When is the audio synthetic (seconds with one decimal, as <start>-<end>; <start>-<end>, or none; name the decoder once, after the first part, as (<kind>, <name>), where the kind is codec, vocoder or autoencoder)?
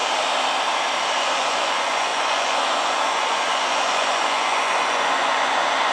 1.2-5.9 (vocoder, Vocos)